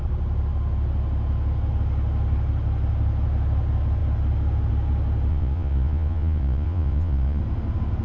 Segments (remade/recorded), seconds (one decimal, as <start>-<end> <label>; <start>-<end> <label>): 0.0-5.3 recorded; 5.3-7.4 remade; 7.4-8.0 recorded